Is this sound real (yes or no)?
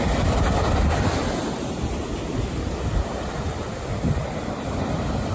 yes